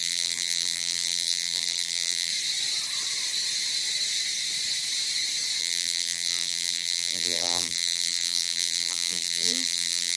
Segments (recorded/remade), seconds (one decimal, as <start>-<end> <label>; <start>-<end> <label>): 0.0-2.3 remade; 2.3-5.6 recorded; 5.6-10.2 remade